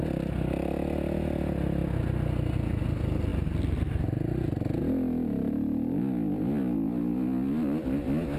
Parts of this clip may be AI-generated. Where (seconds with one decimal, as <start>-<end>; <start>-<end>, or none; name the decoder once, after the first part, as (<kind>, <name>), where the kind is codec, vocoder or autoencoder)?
none